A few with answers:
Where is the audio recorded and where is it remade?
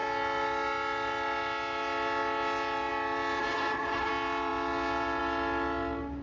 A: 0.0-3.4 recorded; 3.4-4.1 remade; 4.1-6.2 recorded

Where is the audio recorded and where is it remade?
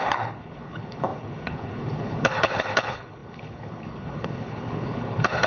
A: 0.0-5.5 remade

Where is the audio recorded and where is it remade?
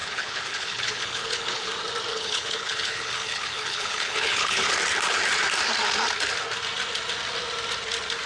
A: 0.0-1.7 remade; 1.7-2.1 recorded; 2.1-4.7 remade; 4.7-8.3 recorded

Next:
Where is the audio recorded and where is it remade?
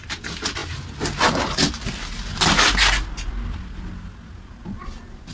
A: 0.0-5.3 recorded